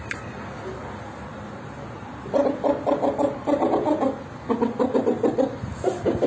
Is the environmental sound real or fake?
real